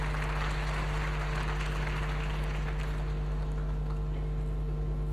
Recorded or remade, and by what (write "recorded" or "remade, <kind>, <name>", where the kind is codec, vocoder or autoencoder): recorded